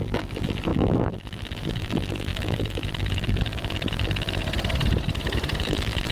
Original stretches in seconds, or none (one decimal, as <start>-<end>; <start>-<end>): 4.4-5.6